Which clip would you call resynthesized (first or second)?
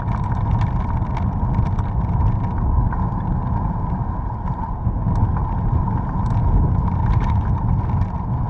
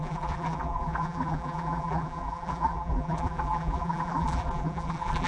second